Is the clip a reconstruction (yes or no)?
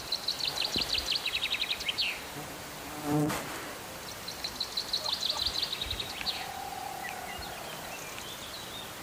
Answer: no